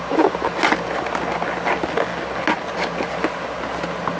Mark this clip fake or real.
real